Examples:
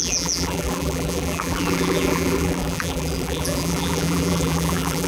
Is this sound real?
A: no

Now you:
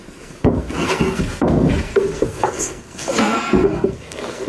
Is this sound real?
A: no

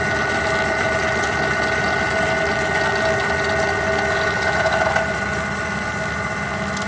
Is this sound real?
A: yes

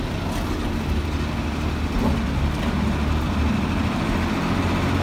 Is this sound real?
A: yes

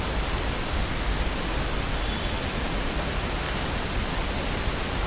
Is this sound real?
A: yes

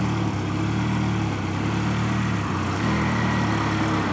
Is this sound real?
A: yes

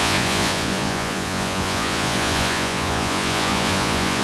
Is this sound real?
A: no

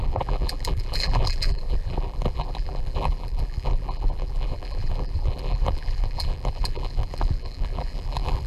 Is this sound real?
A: no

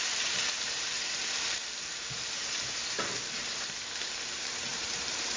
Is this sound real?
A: no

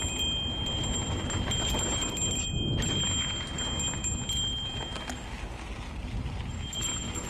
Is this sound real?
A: yes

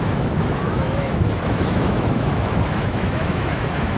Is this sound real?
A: no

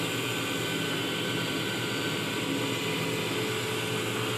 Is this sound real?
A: yes